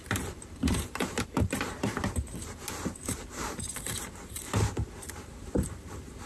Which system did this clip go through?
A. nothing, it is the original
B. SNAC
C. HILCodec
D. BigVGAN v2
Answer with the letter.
D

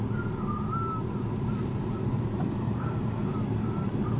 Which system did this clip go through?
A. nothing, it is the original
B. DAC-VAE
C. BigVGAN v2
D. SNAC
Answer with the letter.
C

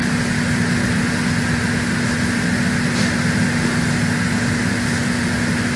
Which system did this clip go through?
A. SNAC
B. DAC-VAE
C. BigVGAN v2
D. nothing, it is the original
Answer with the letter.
D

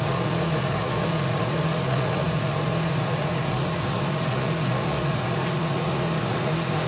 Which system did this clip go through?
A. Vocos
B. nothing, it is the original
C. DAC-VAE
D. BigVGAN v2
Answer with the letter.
A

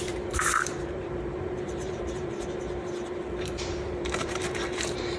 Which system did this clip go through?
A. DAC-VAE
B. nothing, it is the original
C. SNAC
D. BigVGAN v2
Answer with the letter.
D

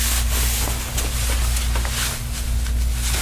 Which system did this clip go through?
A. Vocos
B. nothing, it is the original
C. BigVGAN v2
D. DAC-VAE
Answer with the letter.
B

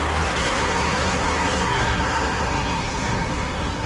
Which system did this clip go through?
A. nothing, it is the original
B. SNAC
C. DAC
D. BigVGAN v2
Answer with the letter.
B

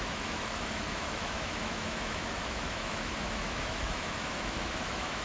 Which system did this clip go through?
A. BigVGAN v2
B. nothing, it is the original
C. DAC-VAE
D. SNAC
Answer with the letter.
C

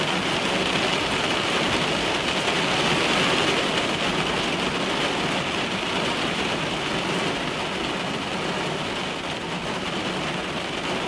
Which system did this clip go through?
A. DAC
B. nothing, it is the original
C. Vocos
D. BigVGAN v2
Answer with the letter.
B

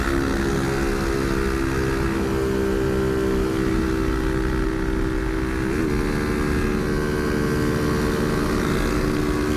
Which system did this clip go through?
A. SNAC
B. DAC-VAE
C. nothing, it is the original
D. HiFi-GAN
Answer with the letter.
C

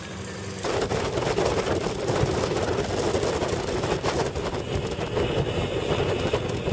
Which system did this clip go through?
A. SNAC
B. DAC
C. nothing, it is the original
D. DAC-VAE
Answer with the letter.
C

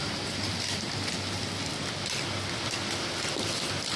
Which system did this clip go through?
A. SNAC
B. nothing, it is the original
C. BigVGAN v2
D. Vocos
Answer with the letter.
B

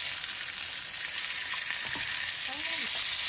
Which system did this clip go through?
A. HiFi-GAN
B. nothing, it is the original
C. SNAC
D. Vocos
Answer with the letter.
B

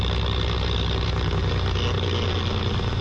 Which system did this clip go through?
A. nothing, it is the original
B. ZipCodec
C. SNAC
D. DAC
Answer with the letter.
A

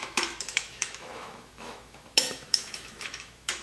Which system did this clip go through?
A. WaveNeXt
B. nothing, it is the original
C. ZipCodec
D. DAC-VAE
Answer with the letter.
D